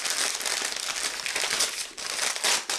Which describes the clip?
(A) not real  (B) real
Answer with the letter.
B